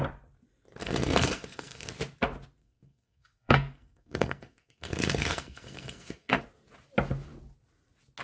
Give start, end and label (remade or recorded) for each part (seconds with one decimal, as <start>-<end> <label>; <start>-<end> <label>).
0.0-0.8 recorded; 0.8-1.9 remade; 1.9-2.6 recorded; 2.6-6.4 remade; 6.4-8.2 recorded